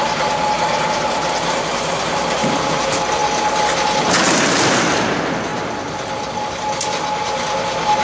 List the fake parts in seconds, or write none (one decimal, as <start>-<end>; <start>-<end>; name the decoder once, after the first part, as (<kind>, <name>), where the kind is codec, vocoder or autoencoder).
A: none